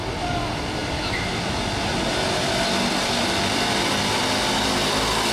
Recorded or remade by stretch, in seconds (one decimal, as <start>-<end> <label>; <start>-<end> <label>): 0.0-0.8 recorded; 0.8-4.0 remade; 4.0-5.3 recorded